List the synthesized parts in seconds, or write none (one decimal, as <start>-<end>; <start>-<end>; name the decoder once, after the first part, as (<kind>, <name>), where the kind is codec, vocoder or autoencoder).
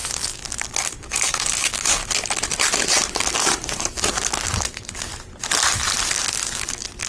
0.0-2.0 (codec, DAC); 3.1-5.1; 6.0-7.1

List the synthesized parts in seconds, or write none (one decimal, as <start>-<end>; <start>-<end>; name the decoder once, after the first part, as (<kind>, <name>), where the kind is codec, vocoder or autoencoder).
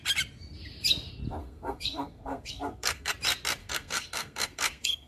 1.4-3.1 (codec, SNAC); 3.6-5.1